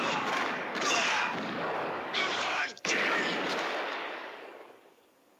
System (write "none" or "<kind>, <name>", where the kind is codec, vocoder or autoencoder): codec, DAC